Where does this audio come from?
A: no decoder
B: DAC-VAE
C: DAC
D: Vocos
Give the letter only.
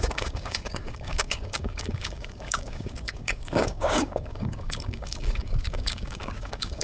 C